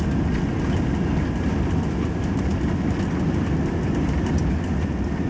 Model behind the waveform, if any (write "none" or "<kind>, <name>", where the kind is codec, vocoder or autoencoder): none